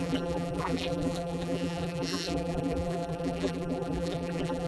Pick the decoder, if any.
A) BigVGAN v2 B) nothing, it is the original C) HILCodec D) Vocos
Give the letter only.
A